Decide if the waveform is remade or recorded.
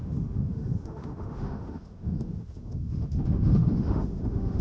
remade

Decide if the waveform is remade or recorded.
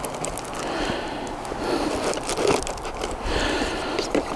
recorded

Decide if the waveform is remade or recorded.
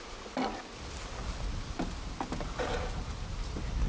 recorded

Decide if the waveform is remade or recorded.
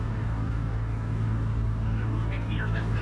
remade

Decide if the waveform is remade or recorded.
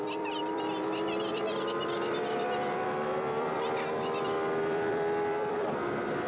remade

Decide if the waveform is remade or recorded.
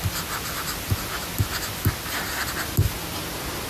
recorded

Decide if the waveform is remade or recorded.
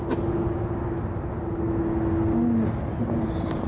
recorded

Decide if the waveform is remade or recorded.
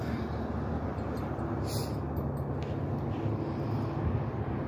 recorded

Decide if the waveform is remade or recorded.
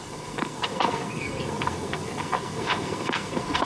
remade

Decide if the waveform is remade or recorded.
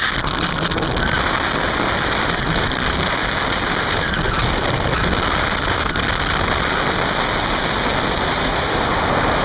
recorded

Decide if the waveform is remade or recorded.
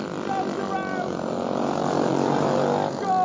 recorded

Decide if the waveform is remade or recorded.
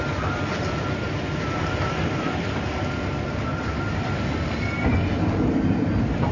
recorded